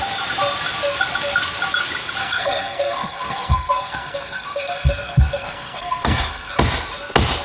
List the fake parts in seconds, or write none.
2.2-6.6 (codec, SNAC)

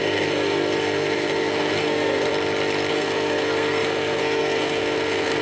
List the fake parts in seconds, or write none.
0.0-2.3 (codec, SNAC); 2.9-5.4

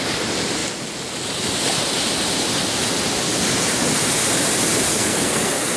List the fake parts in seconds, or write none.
4.9-5.8 (codec, SNAC)